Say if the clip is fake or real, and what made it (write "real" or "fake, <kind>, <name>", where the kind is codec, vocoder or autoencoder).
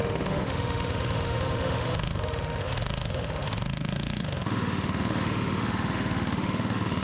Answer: fake, autoencoder, DAC-VAE